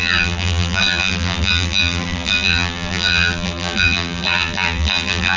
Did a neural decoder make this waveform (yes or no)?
yes